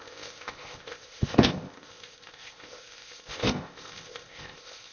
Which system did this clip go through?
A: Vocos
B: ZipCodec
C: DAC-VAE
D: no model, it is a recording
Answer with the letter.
B